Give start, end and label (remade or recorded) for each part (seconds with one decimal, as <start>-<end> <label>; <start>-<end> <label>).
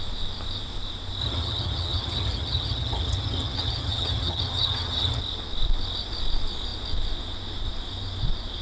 0.0-1.2 recorded; 1.2-5.2 remade; 5.2-8.6 recorded